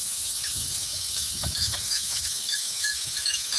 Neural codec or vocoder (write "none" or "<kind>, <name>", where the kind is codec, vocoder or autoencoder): autoencoder, DAC-VAE